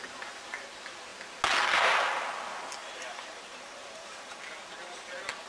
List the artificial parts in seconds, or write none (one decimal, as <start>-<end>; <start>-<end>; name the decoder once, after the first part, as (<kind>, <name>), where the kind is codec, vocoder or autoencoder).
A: 2.8-4.4 (vocoder, BigVGAN v2)